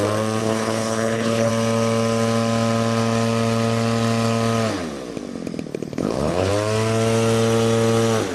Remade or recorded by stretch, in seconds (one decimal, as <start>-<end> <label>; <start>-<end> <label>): 0.0-0.4 recorded; 0.4-1.5 remade; 1.5-5.7 recorded; 5.7-6.5 remade; 6.5-8.3 recorded